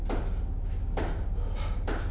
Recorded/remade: recorded